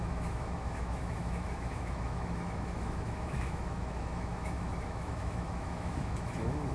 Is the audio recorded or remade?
remade